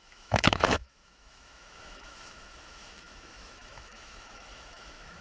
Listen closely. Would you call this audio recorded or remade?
remade